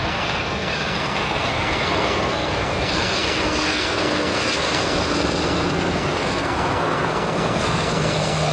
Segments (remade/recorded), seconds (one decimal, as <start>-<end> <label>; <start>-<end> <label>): 0.0-8.5 remade

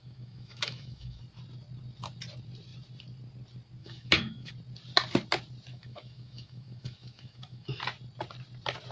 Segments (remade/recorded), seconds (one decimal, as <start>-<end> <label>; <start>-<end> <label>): 0.0-1.2 remade; 1.2-3.8 recorded; 3.8-4.5 remade; 4.5-5.7 recorded; 5.7-7.8 remade; 7.8-8.9 recorded

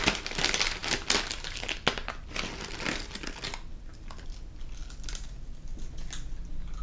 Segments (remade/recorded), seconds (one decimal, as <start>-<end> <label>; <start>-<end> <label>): 0.0-6.8 recorded

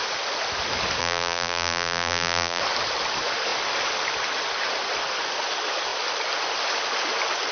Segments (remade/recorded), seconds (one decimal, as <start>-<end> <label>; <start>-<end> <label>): 0.0-1.0 recorded; 1.0-2.6 remade; 2.6-7.5 recorded

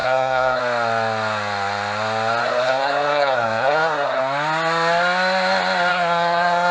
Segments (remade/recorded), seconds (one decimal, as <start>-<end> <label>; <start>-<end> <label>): 0.0-0.6 remade; 0.6-2.4 recorded; 2.4-4.2 remade; 4.2-5.9 recorded; 5.9-6.7 remade

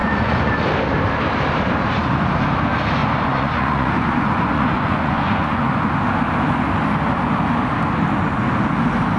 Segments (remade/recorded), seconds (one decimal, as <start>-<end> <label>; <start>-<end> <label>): 0.0-0.5 remade; 0.5-3.0 recorded; 3.0-5.9 remade; 5.9-9.2 recorded

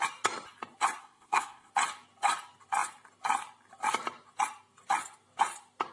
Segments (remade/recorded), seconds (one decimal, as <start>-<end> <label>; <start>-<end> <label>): 0.0-1.0 recorded; 1.0-1.7 remade; 1.7-5.9 recorded